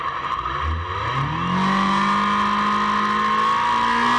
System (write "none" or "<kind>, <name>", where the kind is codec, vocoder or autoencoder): none